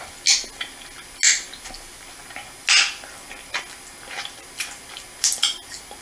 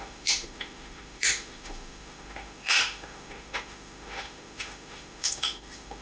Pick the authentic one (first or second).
first